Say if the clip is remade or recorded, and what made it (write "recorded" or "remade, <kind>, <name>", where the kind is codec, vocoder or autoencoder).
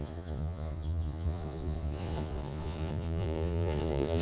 remade, vocoder, Vocos